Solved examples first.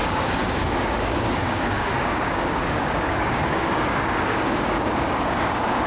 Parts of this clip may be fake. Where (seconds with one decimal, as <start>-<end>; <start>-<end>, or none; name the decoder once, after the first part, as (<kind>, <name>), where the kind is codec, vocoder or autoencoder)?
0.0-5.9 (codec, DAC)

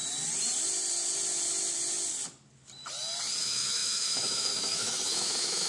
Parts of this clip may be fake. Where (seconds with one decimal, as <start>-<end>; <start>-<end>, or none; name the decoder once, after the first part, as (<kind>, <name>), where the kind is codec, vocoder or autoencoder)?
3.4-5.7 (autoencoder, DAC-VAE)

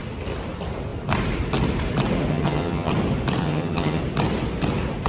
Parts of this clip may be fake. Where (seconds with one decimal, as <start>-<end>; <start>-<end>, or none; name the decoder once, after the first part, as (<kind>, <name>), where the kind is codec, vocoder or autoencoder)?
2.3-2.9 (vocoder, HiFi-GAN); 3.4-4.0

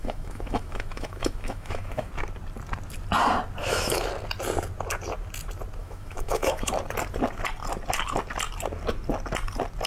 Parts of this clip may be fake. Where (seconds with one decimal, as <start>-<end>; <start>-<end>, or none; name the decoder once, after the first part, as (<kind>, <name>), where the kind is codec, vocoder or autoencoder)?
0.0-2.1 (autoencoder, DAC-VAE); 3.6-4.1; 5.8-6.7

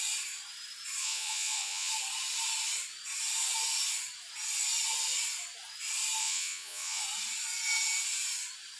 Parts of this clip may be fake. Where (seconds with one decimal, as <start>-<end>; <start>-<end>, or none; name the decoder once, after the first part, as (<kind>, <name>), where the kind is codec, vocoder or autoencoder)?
1.0-1.9 (vocoder, Vocos); 6.2-7.0

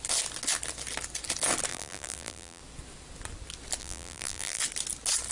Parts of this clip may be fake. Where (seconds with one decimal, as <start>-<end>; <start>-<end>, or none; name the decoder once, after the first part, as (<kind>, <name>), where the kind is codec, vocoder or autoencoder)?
1.7-2.6 (vocoder, BigVGAN v2); 3.8-4.6

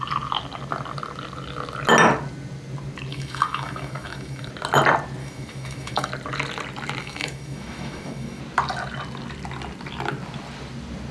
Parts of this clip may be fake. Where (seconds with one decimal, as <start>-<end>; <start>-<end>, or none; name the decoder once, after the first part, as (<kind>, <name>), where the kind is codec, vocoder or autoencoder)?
3.1-4.5 (autoencoder, DAC-VAE); 5.2-6.1; 7.0-8.4

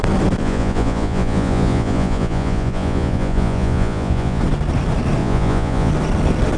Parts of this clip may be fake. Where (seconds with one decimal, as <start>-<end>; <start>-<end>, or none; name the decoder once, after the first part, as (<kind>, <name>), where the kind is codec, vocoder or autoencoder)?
0.4-4.4 (vocoder, Vocos); 5.2-5.9